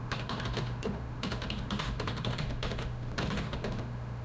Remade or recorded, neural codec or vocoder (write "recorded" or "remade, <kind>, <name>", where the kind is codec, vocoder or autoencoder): remade, autoencoder, DAC-VAE